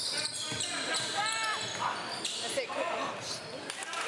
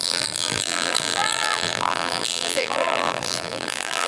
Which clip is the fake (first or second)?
second